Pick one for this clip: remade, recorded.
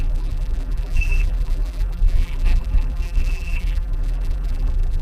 remade